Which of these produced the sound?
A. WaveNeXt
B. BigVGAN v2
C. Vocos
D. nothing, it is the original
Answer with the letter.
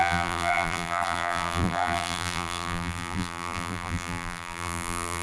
B